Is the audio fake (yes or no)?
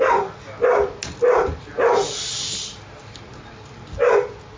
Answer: no